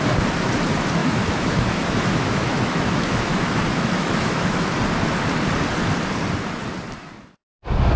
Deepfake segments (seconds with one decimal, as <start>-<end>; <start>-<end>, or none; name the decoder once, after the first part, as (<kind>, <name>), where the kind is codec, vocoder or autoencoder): 1.0-4.8 (autoencoder, DAC-VAE)